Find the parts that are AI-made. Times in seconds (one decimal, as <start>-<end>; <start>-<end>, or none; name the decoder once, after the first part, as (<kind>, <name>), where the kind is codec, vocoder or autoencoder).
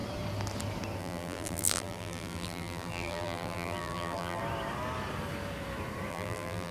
1.0-4.4 (vocoder, BigVGAN v2); 6.1-6.7